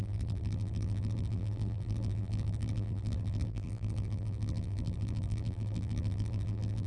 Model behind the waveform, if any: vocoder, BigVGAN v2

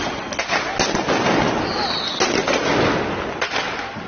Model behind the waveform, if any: none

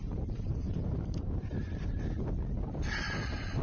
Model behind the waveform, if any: none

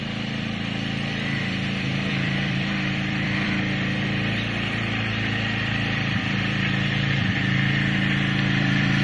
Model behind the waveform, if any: vocoder, BigVGAN v2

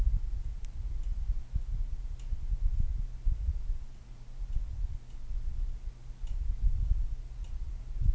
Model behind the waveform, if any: none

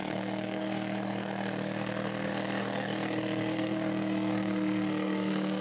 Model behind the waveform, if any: codec, SNAC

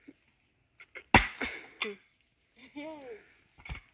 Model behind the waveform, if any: none